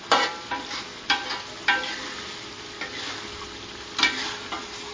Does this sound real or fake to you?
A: real